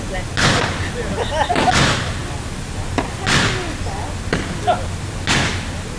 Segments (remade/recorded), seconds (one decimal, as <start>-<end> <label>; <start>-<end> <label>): 0.0-6.0 recorded